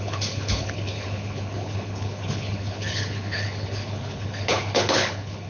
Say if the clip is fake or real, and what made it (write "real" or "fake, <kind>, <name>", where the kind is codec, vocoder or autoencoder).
fake, codec, HILCodec